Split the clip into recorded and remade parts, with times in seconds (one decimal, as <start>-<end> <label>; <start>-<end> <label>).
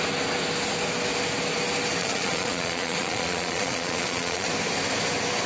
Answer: 0.0-2.0 recorded; 2.0-4.5 remade; 4.5-5.5 recorded